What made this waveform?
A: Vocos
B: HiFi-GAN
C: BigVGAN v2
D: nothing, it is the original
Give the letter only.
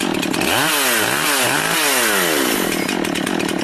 D